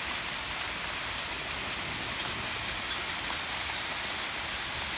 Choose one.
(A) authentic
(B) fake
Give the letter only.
A